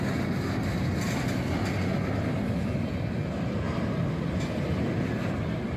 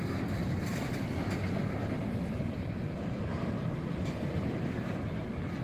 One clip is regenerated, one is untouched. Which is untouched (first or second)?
first